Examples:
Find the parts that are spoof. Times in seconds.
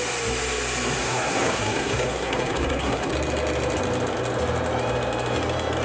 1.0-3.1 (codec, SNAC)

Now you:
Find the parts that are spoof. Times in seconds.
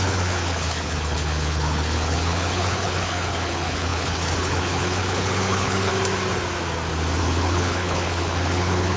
0.0-5.9 (codec, HILCodec); 7.2-9.0